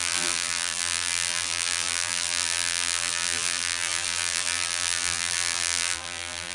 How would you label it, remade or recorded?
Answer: remade